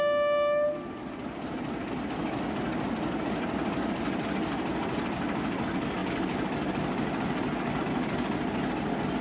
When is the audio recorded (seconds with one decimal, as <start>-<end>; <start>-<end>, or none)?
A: 0.0-9.2